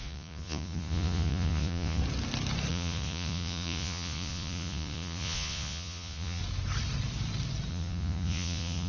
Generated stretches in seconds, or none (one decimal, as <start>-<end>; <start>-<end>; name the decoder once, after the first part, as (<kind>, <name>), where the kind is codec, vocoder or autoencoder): 0.0-2.0 (vocoder, Vocos); 2.7-6.4; 7.7-8.9